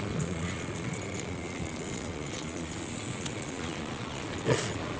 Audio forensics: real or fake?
fake